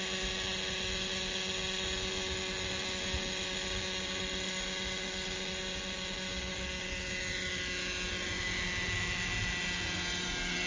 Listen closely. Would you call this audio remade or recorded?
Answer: recorded